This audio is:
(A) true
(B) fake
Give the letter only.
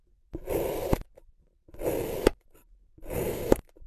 B